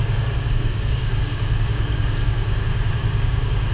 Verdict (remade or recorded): remade